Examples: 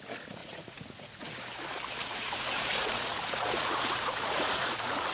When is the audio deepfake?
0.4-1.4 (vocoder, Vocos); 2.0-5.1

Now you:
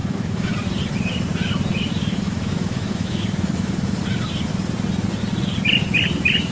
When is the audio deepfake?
0.0-0.5 (autoencoder, DAC-VAE); 2.0-4.0

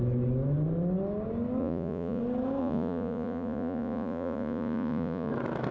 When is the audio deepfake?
1.6-2.2 (vocoder, Vocos); 2.6-5.3

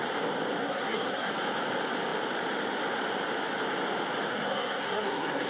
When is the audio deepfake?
0.6-1.3 (codec, SNAC); 4.3-5.5

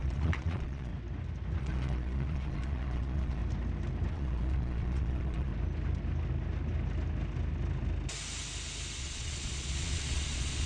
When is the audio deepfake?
0.0-0.9 (vocoder, Vocos); 1.6-3.4; 4.1-5.5; 9.0-10.7